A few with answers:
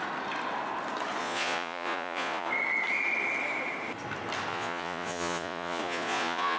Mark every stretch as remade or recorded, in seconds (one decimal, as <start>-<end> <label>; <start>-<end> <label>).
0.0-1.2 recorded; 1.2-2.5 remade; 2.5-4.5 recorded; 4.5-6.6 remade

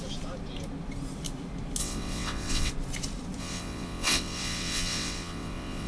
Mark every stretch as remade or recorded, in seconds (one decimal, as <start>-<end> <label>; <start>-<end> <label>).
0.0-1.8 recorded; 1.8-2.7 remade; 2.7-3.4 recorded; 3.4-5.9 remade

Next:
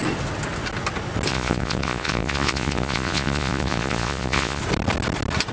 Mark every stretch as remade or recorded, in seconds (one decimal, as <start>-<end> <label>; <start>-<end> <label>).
0.0-1.3 recorded; 1.3-4.6 remade; 4.6-5.5 recorded